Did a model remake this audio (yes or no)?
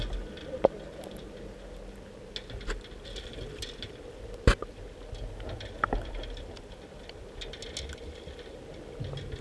no